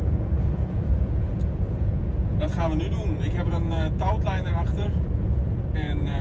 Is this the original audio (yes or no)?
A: no